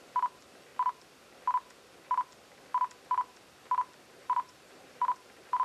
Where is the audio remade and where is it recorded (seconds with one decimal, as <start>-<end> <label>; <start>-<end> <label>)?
0.0-0.7 remade; 0.7-4.1 recorded; 4.1-5.6 remade

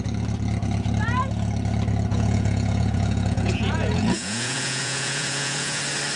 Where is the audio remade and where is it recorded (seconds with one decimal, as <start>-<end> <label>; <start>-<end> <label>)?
0.0-2.1 recorded; 2.1-5.8 remade; 5.8-6.2 recorded

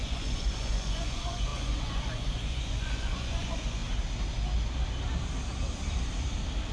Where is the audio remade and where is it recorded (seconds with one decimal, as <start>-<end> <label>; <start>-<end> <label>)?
0.0-3.8 remade; 3.8-6.7 recorded

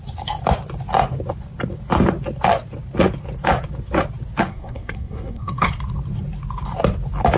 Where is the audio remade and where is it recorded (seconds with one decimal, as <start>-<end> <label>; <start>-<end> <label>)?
0.0-4.5 recorded; 4.5-5.7 remade; 5.7-7.4 recorded

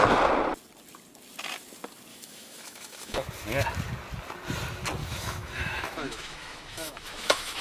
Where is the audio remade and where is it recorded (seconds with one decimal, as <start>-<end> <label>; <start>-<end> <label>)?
0.0-2.1 recorded; 2.1-3.3 remade; 3.3-5.0 recorded; 5.0-7.6 remade

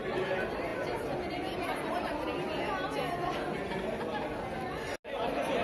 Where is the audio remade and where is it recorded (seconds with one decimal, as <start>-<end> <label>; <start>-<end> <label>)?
0.0-5.6 recorded

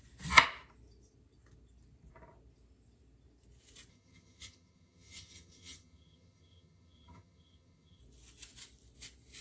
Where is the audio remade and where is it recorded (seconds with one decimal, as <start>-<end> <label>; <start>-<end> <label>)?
0.0-3.9 recorded; 3.9-8.0 remade; 8.0-9.4 recorded